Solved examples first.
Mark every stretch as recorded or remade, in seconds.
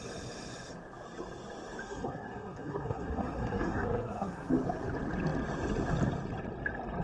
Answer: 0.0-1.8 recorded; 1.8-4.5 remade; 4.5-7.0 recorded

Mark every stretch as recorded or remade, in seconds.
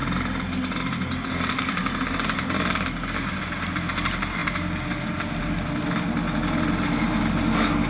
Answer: 0.0-7.9 recorded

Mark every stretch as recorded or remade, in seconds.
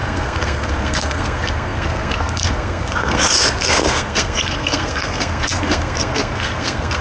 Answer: 0.0-7.0 remade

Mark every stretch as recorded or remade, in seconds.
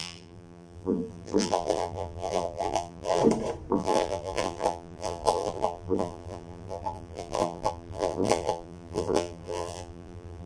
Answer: 0.0-3.2 remade; 3.2-3.7 recorded; 3.7-10.5 remade